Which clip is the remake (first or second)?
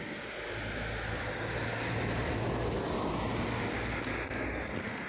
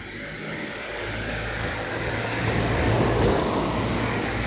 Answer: second